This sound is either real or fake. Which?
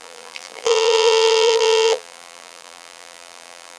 fake